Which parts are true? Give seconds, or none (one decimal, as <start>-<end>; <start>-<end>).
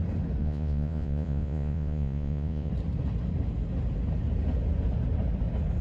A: 0.0-0.4; 2.7-5.8